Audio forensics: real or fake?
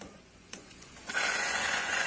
fake